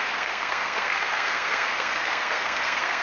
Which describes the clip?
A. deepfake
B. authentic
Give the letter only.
A